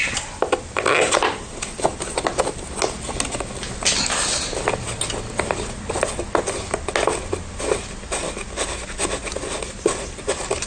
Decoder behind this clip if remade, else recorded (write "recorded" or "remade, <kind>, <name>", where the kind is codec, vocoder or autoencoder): recorded